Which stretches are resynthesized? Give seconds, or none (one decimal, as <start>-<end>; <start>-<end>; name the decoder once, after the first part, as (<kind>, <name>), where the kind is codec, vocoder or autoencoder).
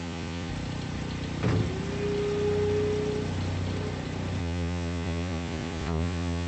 0.0-0.5 (vocoder, Vocos); 4.4-6.5